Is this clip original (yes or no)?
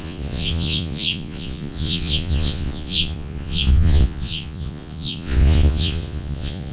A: no